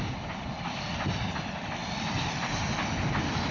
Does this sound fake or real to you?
real